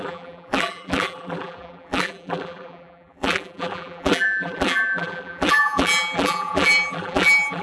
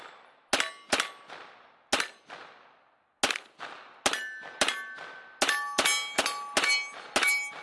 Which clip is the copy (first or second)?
first